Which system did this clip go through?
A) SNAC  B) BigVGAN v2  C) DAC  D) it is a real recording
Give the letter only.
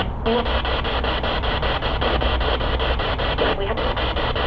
D